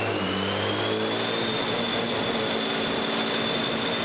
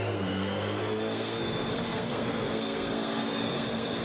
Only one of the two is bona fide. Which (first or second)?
first